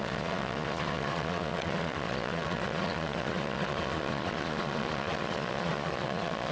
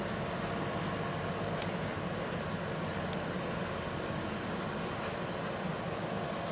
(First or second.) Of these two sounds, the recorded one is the second